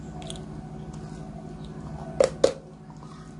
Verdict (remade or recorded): recorded